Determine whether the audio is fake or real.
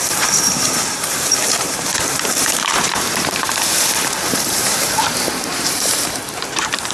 fake